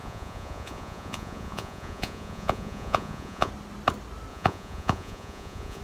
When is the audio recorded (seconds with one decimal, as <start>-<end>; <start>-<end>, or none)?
3.5-4.3